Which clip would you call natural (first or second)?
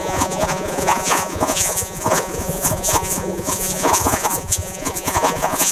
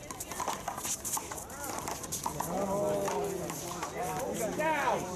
second